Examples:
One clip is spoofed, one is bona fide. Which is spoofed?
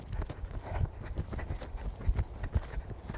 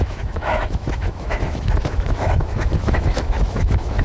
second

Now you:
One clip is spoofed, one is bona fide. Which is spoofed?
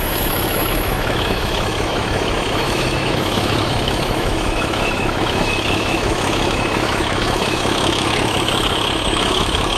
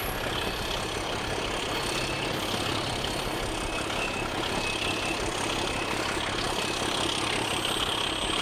first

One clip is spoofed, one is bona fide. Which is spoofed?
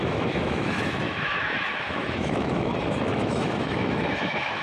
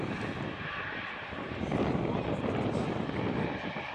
first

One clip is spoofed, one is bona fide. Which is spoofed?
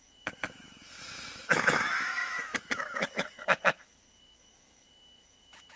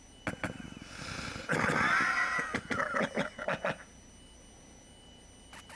first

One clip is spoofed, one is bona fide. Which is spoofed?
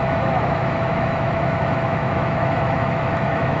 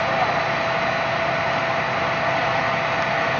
first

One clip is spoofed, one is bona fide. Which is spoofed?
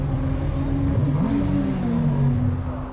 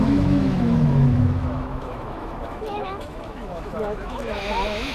second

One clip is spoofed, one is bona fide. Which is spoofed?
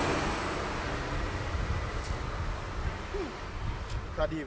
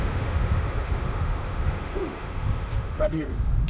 second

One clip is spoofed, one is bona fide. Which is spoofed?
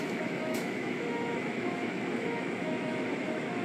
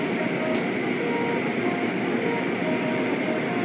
first